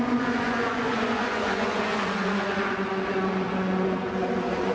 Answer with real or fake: fake